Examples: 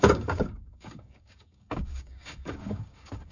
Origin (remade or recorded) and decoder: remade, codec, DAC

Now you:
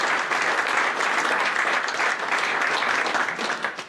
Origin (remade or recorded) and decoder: recorded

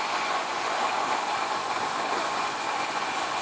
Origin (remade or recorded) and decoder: remade, vocoder, Vocos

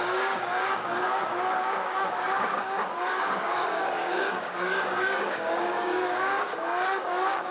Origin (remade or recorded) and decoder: remade, codec, DAC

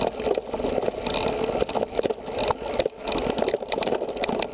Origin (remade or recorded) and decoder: recorded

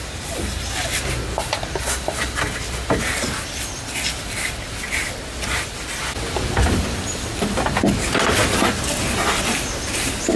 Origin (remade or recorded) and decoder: recorded